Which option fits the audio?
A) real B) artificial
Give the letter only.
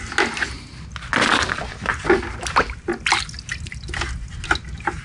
A